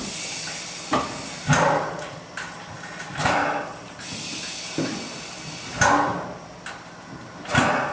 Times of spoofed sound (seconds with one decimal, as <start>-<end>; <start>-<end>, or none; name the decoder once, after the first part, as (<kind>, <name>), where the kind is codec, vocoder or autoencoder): none